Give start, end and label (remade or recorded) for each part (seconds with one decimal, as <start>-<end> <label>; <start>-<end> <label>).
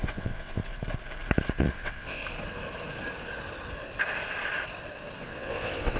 0.0-0.6 remade; 0.6-1.6 recorded; 1.6-2.2 remade; 2.2-5.2 recorded; 5.2-6.0 remade